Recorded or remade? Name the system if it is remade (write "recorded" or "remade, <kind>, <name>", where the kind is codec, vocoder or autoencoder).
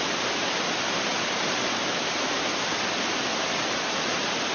recorded